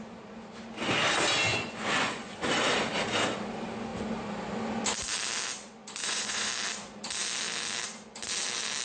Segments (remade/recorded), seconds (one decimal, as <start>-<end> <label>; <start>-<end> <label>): 0.0-1.5 recorded; 1.5-2.5 remade; 2.5-6.0 recorded; 6.0-6.5 remade; 6.5-8.8 recorded